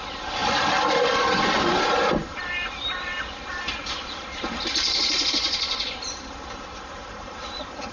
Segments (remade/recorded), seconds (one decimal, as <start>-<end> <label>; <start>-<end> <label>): 0.0-0.4 remade; 0.4-1.8 recorded; 1.8-7.9 remade